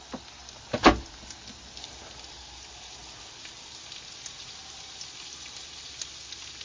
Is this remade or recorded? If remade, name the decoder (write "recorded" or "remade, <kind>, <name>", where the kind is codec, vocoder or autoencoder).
recorded